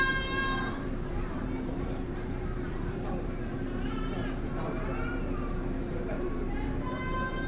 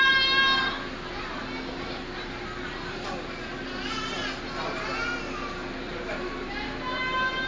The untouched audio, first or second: second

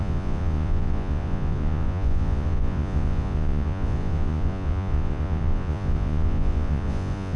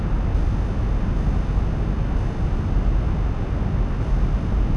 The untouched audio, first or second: second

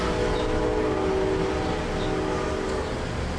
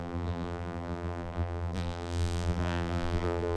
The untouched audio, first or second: first